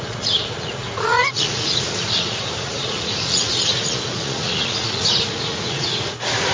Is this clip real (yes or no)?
no